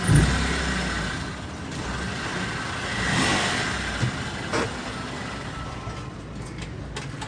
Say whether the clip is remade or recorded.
recorded